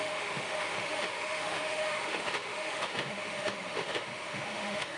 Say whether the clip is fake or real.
fake